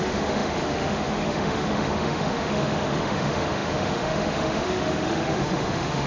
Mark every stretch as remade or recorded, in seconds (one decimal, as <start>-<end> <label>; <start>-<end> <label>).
0.0-6.1 remade